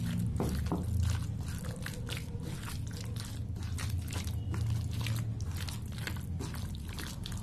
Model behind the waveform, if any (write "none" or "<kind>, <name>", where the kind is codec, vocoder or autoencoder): none